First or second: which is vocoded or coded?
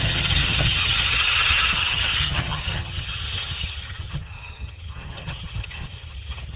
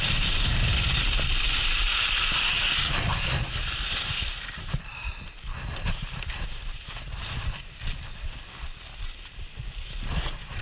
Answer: first